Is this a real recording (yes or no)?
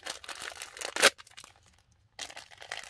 yes